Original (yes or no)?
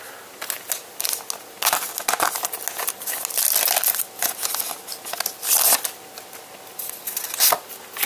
yes